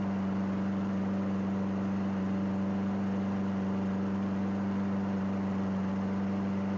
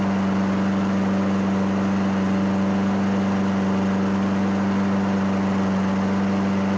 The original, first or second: second